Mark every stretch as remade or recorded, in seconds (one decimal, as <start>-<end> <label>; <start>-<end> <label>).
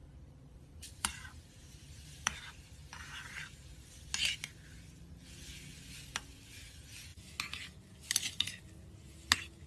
0.0-4.1 remade; 4.1-9.7 recorded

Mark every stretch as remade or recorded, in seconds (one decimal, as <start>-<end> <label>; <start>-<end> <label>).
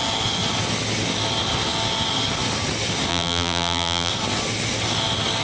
0.0-3.1 recorded; 3.1-4.1 remade; 4.1-5.4 recorded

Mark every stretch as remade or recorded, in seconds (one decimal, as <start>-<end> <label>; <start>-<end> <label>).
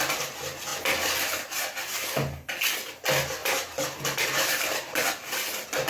0.0-3.4 recorded; 3.4-5.0 remade; 5.0-5.9 recorded